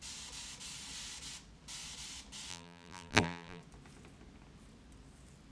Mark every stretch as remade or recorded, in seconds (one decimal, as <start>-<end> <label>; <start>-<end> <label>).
0.0-2.5 recorded; 2.5-3.6 remade; 3.6-5.5 recorded